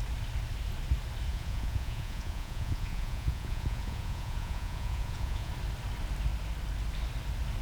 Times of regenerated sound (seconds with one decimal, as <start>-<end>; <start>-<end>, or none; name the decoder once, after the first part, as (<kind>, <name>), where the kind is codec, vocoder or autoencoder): 1.3-5.5 (vocoder, Vocos)